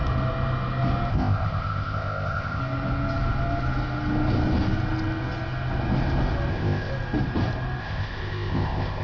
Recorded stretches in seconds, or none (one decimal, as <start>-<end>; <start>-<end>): 0.0-1.1; 2.6-6.5; 6.9-7.8